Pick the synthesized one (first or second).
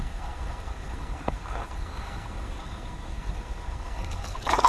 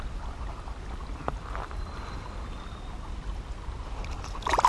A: first